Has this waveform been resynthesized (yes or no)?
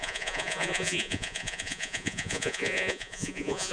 yes